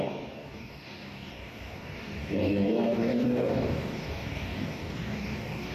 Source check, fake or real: fake